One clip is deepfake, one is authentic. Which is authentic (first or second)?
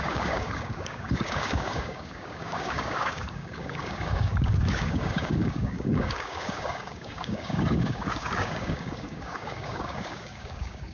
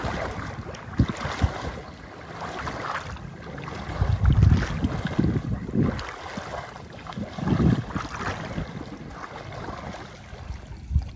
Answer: second